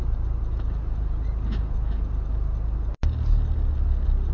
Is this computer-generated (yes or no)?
no